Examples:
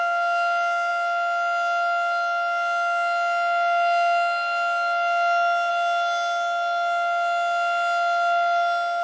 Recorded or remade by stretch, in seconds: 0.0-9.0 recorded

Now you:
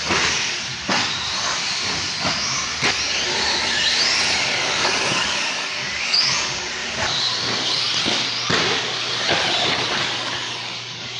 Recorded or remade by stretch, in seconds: 0.0-0.7 remade; 0.7-4.4 recorded; 4.4-6.8 remade; 6.8-9.9 recorded; 9.9-11.2 remade